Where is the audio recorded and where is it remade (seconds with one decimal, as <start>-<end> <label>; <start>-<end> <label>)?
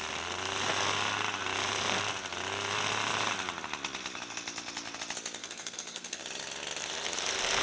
0.0-5.4 recorded; 5.4-6.2 remade; 6.2-7.6 recorded